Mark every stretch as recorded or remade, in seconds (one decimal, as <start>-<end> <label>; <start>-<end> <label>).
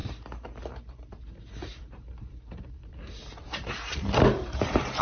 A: 0.0-5.0 remade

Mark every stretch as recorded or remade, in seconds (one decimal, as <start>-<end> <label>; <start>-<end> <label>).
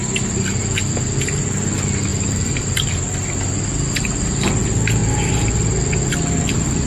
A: 0.0-1.4 remade; 1.4-2.1 recorded; 2.1-4.6 remade; 4.6-6.9 recorded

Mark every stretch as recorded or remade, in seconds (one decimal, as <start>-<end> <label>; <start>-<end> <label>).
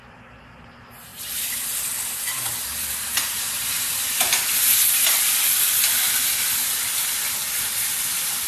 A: 0.0-8.5 recorded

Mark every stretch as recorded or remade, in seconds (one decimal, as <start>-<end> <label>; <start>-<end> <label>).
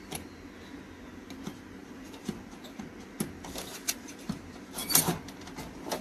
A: 0.0-1.8 recorded; 1.8-2.8 remade; 2.8-4.8 recorded; 4.8-5.6 remade; 5.6-6.0 recorded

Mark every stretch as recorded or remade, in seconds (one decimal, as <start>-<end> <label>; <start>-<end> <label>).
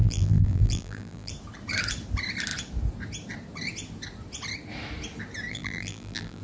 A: 0.0-1.3 remade; 1.3-5.5 recorded; 5.5-6.4 remade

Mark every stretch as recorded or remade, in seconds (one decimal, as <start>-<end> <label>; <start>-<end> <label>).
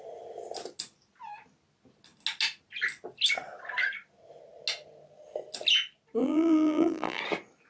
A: 0.0-6.2 recorded; 6.2-7.2 remade; 7.2-7.7 recorded